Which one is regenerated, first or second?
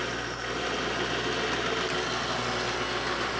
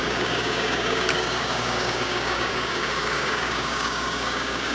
second